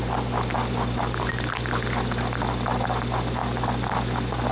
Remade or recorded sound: recorded